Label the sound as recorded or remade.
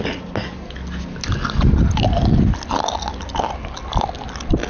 recorded